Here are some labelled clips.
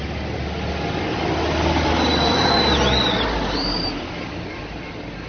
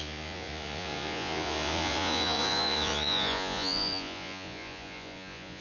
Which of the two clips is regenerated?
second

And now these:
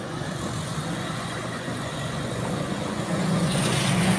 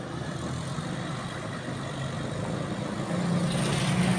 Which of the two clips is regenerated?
first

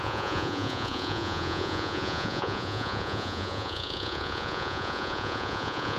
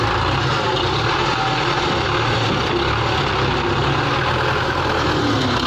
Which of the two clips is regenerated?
first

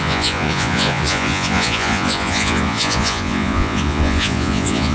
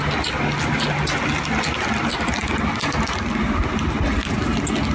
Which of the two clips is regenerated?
first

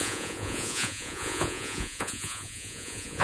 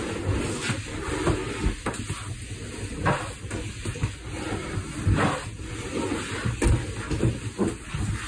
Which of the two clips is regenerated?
first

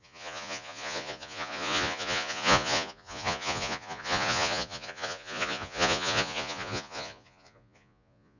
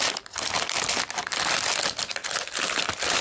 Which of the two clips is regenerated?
first